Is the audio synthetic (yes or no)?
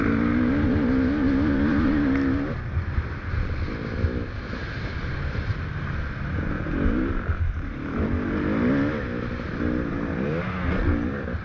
no